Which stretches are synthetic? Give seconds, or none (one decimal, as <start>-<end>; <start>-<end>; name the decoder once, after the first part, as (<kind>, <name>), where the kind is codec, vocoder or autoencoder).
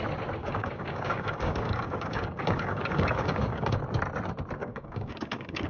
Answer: 0.4-3.8 (codec, DAC); 4.6-5.7